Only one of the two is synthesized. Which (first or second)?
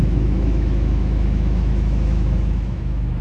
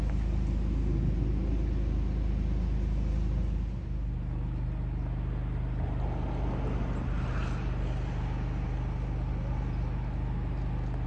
first